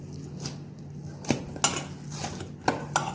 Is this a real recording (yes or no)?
yes